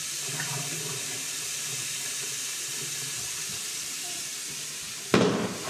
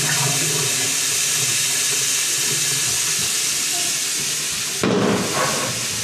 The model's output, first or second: first